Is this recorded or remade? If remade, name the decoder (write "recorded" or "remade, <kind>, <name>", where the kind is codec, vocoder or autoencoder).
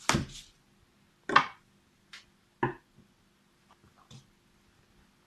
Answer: recorded